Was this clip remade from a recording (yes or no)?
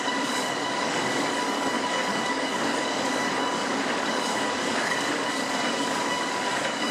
yes